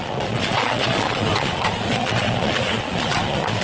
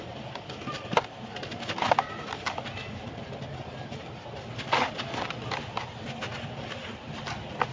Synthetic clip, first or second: first